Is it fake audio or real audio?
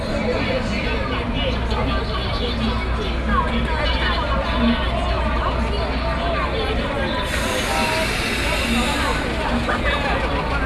real